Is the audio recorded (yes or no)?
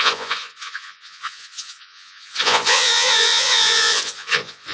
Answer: no